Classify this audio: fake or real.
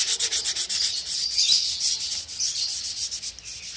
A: real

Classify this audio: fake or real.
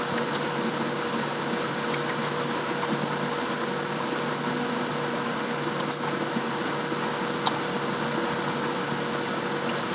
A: real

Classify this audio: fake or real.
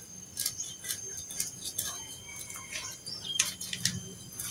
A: real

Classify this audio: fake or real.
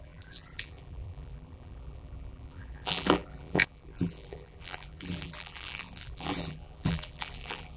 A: fake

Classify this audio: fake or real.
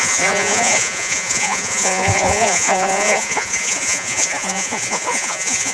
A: fake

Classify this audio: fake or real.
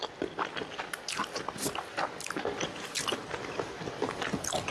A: real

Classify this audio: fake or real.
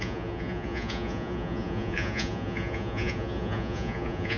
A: fake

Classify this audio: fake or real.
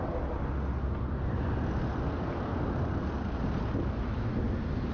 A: real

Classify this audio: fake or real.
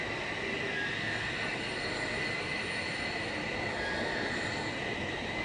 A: real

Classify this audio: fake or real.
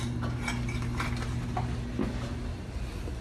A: real